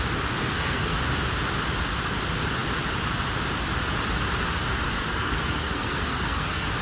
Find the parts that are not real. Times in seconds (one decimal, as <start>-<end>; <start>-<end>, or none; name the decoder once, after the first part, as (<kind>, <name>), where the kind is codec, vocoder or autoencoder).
0.4-1.0 (codec, SNAC); 5.0-6.8